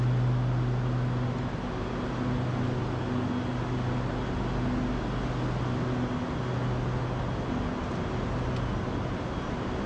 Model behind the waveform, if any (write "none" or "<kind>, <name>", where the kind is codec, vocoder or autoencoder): none